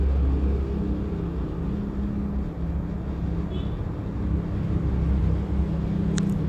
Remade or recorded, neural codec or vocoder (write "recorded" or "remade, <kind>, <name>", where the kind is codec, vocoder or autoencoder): recorded